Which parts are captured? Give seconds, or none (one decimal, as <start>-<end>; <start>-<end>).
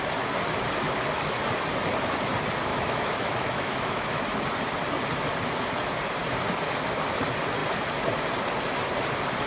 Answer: 0.0-2.7; 4.1-9.5